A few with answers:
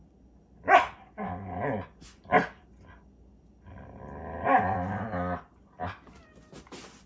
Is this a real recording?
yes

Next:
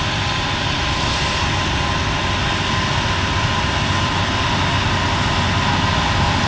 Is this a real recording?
yes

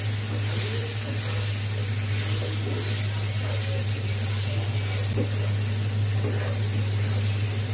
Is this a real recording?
yes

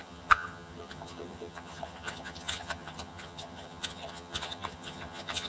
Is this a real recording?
no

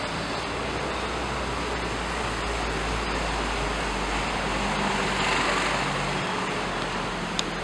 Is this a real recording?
yes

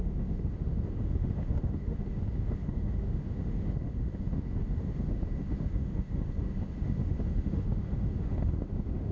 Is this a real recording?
no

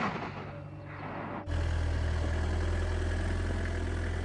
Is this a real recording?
yes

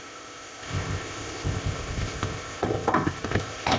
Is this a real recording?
no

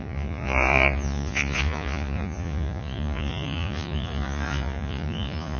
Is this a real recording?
no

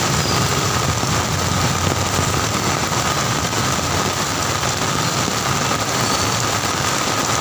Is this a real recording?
yes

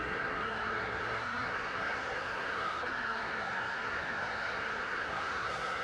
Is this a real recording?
no